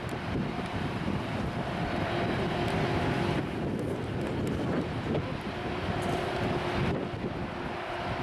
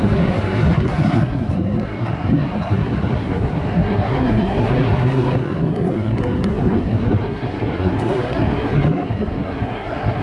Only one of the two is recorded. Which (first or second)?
first